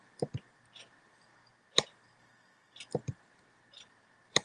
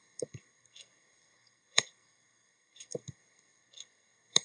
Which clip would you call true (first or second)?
first